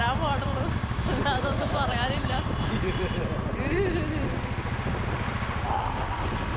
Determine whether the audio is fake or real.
real